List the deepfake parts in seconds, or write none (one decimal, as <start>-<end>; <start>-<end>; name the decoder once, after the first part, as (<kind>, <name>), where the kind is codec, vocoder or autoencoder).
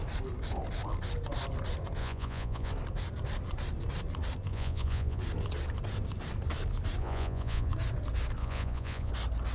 2.0-2.7 (vocoder, Vocos); 4.5-5.2; 7.0-7.7; 8.4-9.1